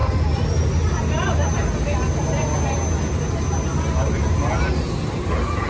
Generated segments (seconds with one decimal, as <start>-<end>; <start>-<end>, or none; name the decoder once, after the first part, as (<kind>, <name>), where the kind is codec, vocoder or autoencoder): none

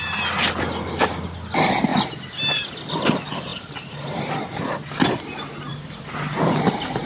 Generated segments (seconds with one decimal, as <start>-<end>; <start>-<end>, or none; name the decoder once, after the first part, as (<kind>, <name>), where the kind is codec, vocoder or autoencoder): 3.5-4.3 (vocoder, BigVGAN v2)

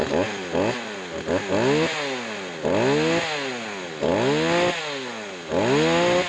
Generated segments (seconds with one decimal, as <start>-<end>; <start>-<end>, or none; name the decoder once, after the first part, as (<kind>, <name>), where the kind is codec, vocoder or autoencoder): none

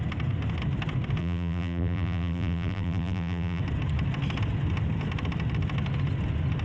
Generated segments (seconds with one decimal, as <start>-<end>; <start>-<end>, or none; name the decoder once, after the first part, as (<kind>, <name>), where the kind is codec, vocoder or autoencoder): 1.2-3.6 (vocoder, BigVGAN v2)

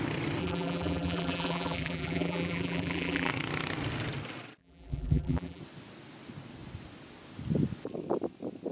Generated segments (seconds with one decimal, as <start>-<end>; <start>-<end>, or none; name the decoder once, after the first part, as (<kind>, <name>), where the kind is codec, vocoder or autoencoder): 0.4-3.3 (vocoder, BigVGAN v2); 4.6-5.6

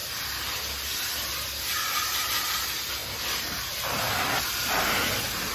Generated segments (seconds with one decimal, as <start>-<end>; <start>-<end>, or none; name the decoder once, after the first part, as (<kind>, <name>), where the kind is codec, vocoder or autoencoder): none

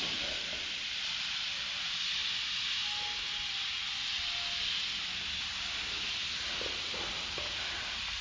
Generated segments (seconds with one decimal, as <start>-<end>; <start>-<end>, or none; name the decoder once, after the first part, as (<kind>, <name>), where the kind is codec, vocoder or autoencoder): 0.0-2.2 (vocoder, BigVGAN v2); 5.0-6.2; 7.1-8.2